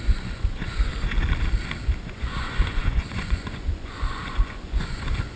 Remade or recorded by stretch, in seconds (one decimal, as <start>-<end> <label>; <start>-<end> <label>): 0.0-0.9 remade; 0.9-2.0 recorded; 2.0-5.4 remade